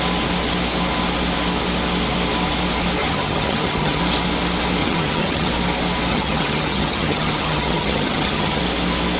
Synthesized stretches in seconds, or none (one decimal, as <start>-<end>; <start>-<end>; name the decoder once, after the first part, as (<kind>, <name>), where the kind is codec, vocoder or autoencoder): 3.0-4.0 (vocoder, HiFi-GAN); 4.8-5.5; 6.1-8.6

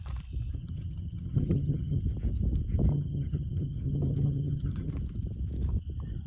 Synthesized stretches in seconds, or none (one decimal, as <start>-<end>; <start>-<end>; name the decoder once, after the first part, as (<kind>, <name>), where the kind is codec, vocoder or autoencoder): 0.6-2.0 (vocoder, HiFi-GAN); 2.9-4.9

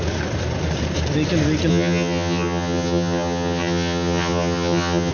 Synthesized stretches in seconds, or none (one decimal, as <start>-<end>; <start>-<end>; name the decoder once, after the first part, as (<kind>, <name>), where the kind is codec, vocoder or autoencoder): 1.7-5.1 (vocoder, HiFi-GAN)

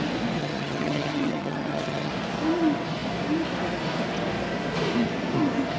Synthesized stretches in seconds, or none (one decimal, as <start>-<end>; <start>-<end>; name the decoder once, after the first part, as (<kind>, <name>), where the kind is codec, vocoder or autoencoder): 0.4-2.1 (vocoder, HiFi-GAN)

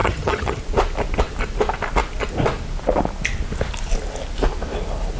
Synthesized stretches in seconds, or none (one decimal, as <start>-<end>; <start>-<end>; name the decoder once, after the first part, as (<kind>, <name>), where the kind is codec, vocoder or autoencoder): 0.0-0.6 (vocoder, HiFi-GAN)

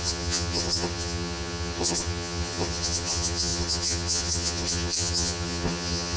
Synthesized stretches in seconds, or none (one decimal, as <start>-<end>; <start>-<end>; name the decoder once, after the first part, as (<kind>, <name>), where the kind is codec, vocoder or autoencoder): 0.0-6.2 (vocoder, HiFi-GAN)

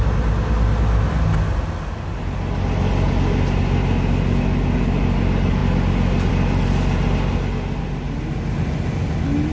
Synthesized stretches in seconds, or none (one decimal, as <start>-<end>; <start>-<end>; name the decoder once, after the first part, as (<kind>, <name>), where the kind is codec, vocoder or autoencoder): none

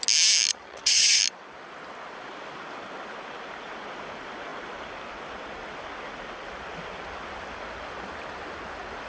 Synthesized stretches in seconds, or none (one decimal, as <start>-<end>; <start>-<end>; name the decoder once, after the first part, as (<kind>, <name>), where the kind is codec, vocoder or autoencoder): 0.5-1.2 (vocoder, HiFi-GAN)